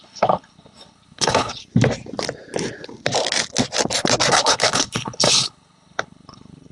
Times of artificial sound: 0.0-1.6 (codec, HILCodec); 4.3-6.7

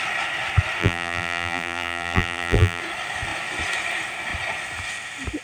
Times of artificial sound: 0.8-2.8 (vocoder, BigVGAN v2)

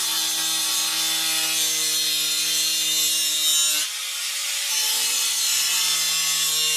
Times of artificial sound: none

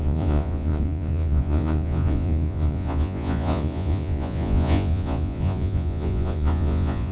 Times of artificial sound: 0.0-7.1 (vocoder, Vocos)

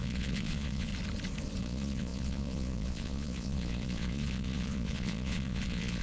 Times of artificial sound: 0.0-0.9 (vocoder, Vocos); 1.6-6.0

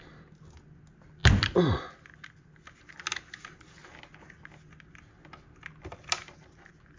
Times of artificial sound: none

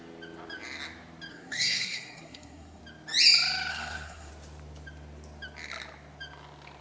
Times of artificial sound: 1.3-2.8 (codec, SNAC); 3.7-4.3